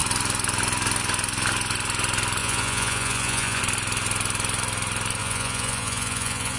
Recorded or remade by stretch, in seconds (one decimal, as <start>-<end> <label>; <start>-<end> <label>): 0.0-2.4 recorded; 2.4-3.6 remade; 3.6-5.2 recorded; 5.2-6.6 remade